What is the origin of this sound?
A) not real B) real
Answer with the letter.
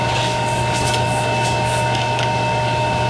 A